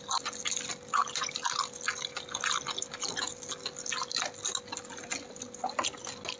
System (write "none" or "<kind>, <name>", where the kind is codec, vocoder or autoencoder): none